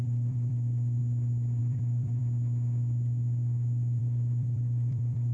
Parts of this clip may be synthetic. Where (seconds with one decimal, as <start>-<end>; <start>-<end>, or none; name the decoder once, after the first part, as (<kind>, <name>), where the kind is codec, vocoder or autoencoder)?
0.0-1.0 (vocoder, BigVGAN v2); 1.6-2.2; 4.0-5.3